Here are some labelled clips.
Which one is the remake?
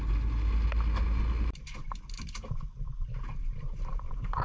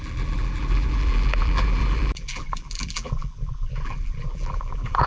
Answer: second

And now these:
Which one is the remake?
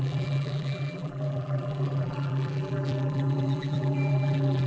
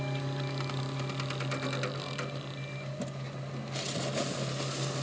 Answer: first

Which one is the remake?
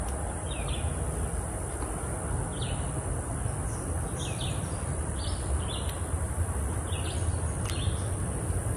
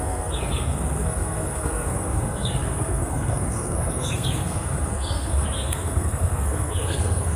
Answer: second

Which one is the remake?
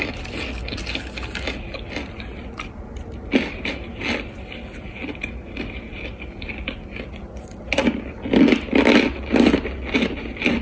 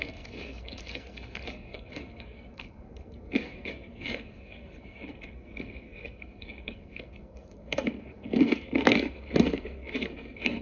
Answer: second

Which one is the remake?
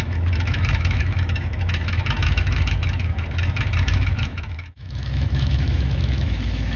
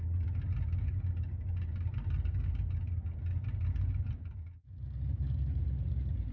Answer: first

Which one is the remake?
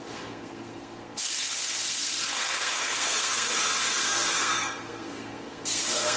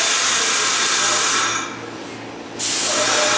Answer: first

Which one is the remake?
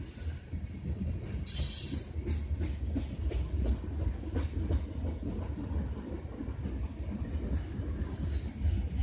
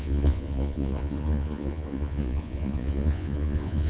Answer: second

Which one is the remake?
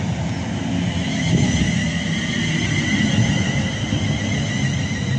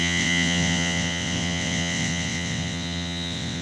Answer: second